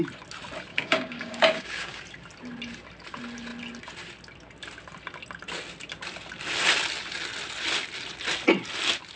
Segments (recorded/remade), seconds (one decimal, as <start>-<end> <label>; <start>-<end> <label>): 0.0-0.7 recorded; 0.7-2.0 remade; 2.0-9.2 recorded